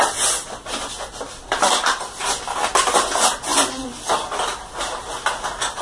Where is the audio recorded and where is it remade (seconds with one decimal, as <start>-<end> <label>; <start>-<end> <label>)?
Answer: 0.0-1.4 recorded; 1.4-2.2 remade; 2.2-5.8 recorded